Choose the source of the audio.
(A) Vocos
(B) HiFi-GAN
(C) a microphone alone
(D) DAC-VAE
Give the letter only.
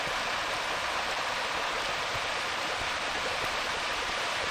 C